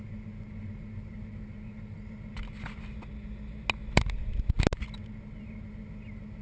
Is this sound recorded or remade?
recorded